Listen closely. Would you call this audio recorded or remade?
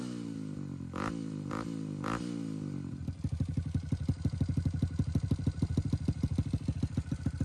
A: remade